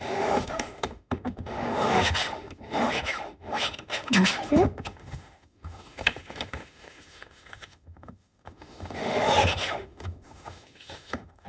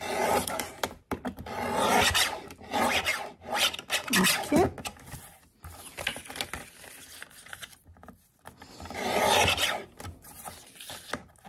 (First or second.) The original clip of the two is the second